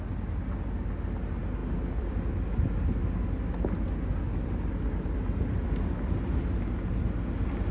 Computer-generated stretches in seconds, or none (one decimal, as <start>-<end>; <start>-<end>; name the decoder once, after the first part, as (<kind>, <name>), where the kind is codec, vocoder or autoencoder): none